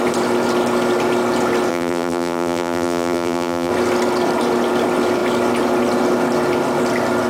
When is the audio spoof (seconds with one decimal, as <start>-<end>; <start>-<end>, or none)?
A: 1.7-3.7